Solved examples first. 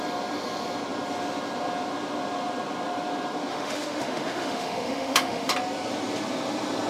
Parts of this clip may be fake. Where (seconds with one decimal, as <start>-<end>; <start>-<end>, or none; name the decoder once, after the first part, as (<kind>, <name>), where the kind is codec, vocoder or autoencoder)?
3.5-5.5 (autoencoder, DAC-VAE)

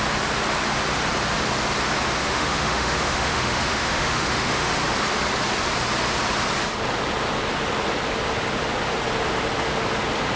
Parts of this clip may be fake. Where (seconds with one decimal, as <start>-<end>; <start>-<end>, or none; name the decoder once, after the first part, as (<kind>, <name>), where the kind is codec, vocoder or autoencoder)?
2.2-4.7 (autoencoder, DAC-VAE)

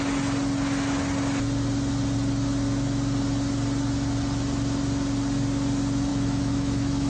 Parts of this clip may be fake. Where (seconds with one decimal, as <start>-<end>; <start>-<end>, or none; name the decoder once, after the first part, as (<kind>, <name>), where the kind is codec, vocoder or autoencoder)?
6.1-7.1 (autoencoder, DAC-VAE)

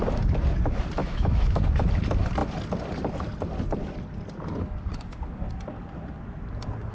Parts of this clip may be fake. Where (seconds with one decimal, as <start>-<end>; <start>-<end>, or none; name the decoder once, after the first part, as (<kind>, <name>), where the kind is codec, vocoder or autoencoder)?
1.0-1.6 (autoencoder, DAC-VAE)